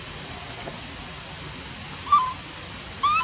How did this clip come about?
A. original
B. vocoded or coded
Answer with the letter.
A